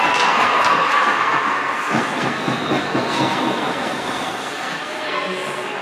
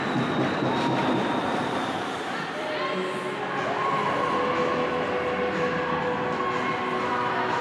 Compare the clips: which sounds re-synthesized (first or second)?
first